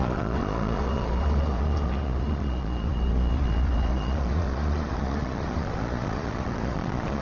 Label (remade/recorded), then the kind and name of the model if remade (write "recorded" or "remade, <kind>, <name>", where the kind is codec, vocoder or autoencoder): remade, vocoder, Vocos